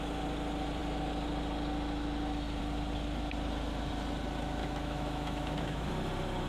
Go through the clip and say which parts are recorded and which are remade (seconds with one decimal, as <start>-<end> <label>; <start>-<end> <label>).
0.0-4.6 recorded; 4.6-5.9 remade; 5.9-6.5 recorded